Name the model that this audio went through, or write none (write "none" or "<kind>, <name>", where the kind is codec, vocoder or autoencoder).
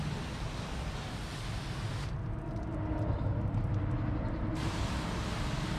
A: none